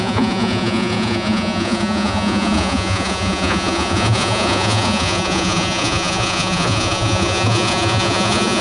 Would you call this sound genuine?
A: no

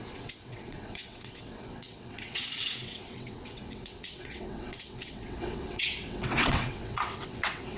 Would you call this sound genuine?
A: no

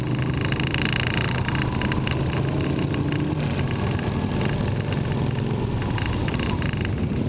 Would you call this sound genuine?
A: yes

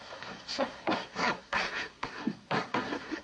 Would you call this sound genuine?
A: no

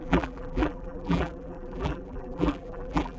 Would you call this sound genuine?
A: no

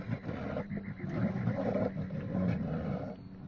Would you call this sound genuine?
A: yes